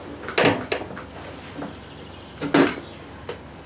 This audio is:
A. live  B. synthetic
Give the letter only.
A